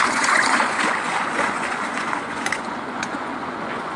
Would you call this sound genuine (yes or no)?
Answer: no